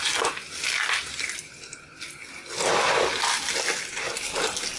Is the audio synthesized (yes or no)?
no